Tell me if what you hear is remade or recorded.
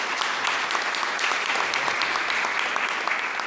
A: recorded